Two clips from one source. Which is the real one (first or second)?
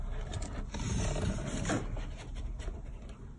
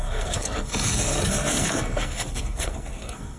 first